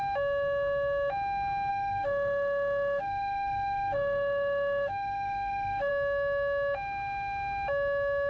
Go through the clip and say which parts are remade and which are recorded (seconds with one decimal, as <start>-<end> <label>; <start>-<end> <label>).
0.0-1.7 recorded; 1.7-5.9 remade; 5.9-8.3 recorded